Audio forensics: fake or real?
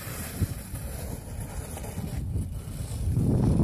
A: real